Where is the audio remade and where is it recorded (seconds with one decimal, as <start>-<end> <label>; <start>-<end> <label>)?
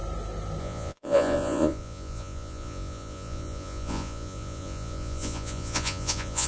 0.0-0.6 recorded; 0.6-6.5 remade